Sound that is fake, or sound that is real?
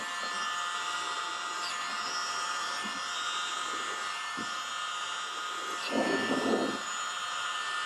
real